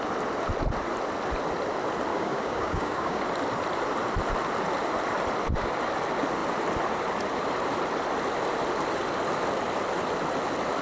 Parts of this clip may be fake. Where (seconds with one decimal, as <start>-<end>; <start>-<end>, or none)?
2.1-3.2